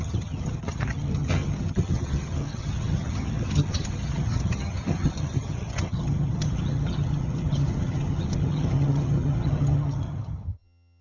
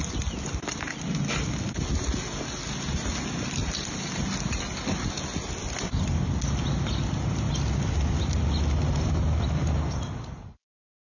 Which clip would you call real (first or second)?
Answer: second